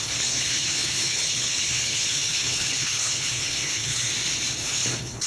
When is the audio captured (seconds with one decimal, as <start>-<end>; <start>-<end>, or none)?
4.1-4.6